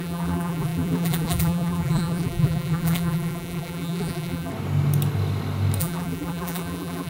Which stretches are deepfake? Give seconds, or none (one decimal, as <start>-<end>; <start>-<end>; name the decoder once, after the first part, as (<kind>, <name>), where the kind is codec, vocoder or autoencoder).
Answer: 0.0-4.5 (vocoder, BigVGAN v2); 5.8-7.1